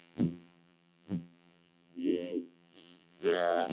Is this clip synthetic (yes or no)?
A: yes